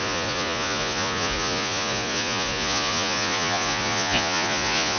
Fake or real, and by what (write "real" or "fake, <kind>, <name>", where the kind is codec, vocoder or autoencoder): fake, vocoder, Vocos